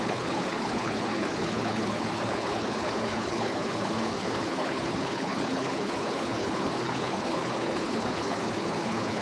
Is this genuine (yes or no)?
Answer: no